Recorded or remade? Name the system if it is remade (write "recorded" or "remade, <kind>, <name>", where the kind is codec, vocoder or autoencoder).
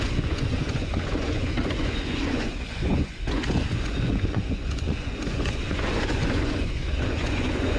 remade, vocoder, Vocos